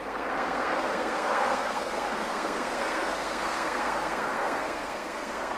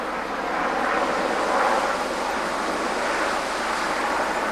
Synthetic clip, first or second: first